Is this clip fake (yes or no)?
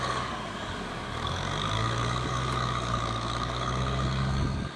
yes